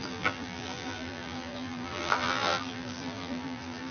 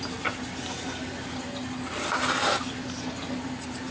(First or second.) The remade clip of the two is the first